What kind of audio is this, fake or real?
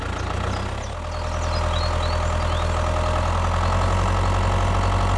real